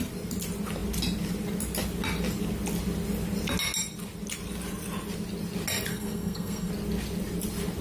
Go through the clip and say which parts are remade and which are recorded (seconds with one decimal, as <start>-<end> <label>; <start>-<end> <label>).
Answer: 0.0-5.9 recorded; 5.9-6.7 remade; 6.7-7.8 recorded